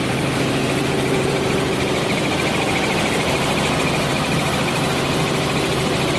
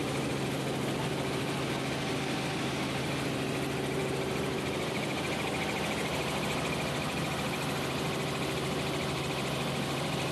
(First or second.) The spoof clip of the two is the first